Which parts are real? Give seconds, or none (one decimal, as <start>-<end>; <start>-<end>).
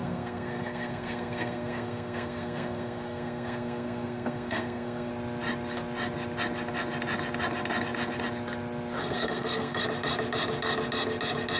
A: 5.1-9.0; 9.8-11.6